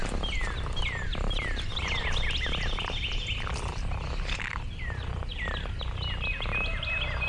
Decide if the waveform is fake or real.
real